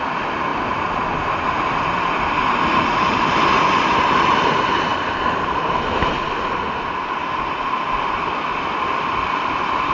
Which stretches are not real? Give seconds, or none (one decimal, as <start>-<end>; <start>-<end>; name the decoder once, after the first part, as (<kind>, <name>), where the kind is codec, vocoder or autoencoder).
none